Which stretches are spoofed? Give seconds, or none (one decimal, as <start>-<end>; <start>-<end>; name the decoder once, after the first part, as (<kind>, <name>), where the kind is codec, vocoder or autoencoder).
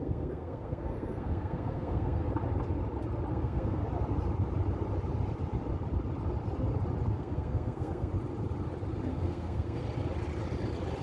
0.0-2.2 (codec, SNAC); 3.3-3.8; 7.1-8.1; 9.1-9.8